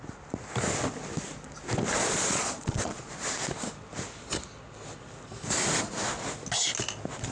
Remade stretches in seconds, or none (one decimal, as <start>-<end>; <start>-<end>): 2.0-3.1